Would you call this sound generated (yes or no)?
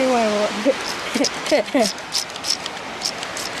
no